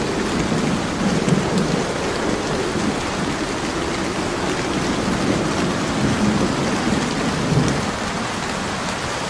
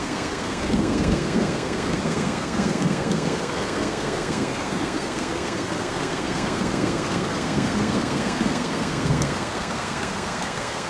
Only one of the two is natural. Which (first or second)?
first